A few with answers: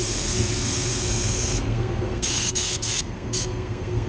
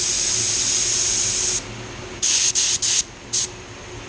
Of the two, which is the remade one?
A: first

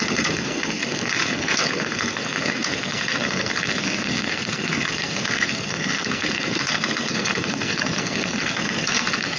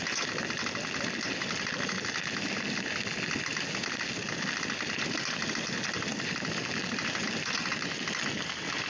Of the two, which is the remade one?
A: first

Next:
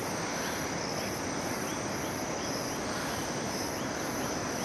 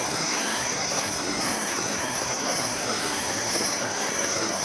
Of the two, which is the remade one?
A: second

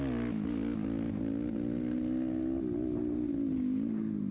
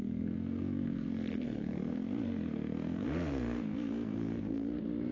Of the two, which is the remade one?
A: second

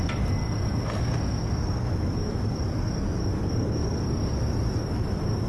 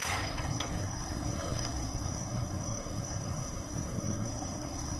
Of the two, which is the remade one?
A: second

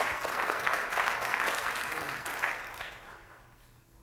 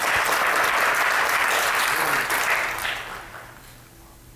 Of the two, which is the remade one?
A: first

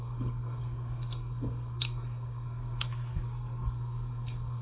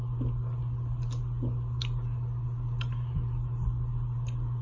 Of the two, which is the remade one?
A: first